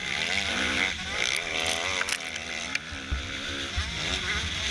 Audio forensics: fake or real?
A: real